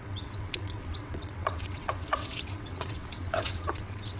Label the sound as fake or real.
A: fake